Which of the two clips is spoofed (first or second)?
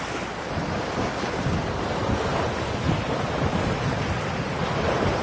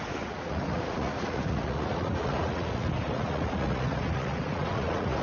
second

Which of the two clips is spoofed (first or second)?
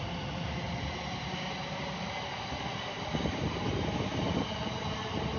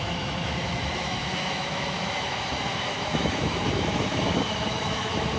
second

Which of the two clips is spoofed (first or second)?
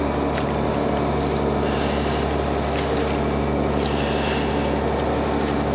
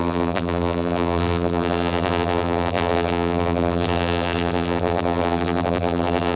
second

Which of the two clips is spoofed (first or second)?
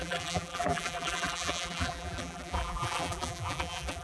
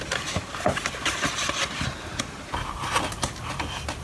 first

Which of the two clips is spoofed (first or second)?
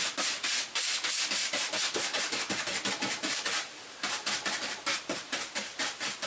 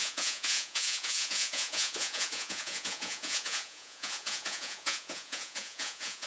second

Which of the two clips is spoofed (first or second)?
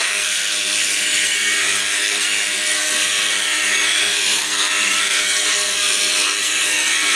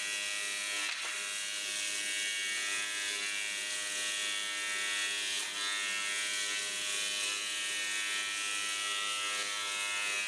first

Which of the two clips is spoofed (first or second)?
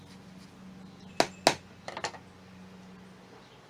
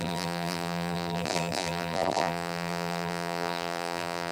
second